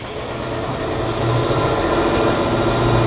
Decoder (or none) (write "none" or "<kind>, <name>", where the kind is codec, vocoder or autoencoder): none